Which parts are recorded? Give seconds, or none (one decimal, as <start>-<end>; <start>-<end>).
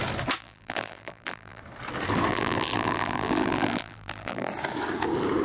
0.0-0.4; 1.6-2.3; 4.5-5.4